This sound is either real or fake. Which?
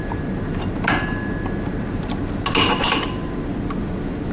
real